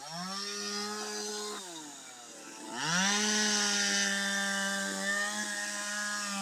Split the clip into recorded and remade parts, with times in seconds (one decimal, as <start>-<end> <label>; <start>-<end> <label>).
0.0-6.4 recorded